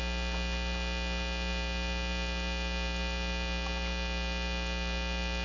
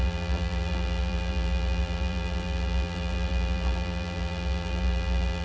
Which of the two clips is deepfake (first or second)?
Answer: second